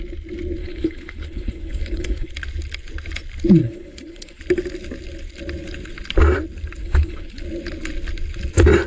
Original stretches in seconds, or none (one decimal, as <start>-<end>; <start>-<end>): 0.0-0.6; 2.3-3.6; 4.4-6.8; 7.4-8.9